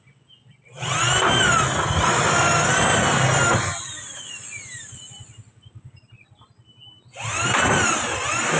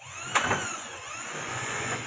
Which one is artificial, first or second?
second